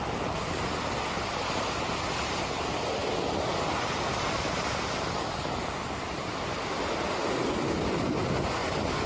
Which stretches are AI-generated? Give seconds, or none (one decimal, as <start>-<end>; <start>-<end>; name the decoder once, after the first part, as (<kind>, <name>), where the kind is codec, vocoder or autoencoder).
8.6-9.1 (vocoder, BigVGAN v2)